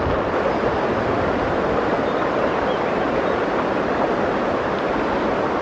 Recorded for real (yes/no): yes